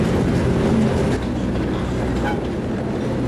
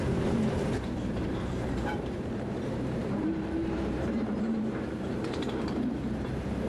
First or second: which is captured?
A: first